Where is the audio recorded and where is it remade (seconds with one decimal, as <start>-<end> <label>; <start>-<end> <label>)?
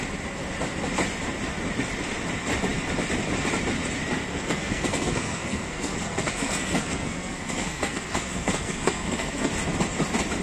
0.0-4.3 recorded; 4.3-9.5 remade; 9.5-10.4 recorded